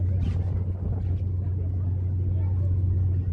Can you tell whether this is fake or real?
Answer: real